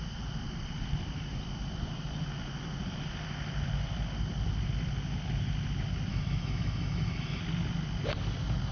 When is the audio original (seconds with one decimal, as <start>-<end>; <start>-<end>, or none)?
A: 0.0-6.1; 7.4-8.7